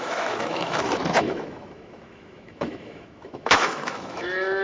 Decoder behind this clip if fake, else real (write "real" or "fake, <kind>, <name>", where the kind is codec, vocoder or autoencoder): fake, autoencoder, DAC-VAE